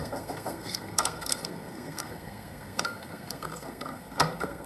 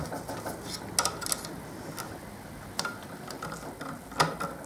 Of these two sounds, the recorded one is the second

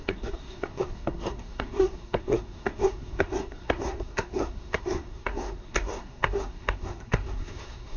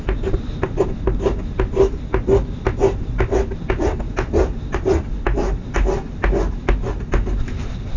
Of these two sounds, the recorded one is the second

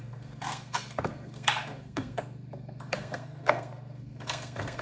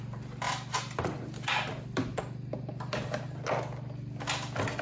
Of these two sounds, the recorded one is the second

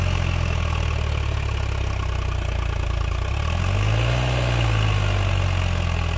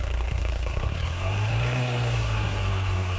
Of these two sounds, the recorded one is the first